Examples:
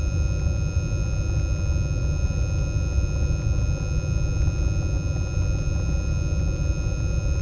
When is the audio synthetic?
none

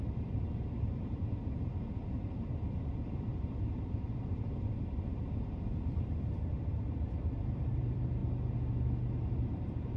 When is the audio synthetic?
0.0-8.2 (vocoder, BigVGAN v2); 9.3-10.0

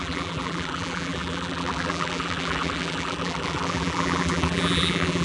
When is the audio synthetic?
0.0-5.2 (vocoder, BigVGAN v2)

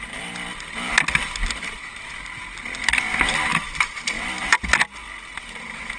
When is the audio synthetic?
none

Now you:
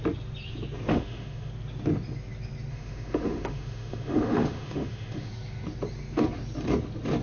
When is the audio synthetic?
0.9-1.5 (autoencoder, DAC-VAE); 2.7-5.3

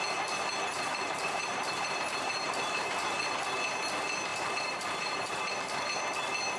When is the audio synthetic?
0.7-3.2 (vocoder, BigVGAN v2); 4.3-5.5